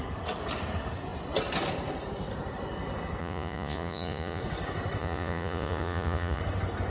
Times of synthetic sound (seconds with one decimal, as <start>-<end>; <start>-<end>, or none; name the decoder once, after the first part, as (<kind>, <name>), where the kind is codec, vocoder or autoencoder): 3.2-4.4 (vocoder, Vocos); 5.0-6.4